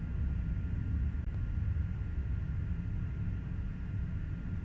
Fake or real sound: real